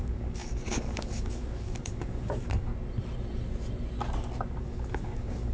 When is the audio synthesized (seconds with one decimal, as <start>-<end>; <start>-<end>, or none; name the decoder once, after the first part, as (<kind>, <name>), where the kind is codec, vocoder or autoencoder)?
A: 0.0-2.7 (codec, DAC); 4.6-5.5